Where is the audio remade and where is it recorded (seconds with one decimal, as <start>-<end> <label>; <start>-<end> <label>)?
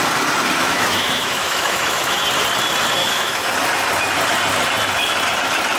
0.0-0.6 recorded; 0.6-2.2 remade; 2.2-3.0 recorded; 3.0-3.5 remade; 3.5-5.8 recorded